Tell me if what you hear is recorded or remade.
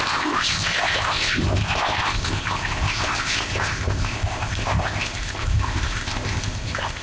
remade